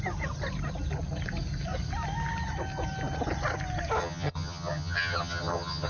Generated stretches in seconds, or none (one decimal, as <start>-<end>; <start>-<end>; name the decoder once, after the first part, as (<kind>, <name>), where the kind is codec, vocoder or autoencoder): 4.0-5.9 (vocoder, HiFi-GAN)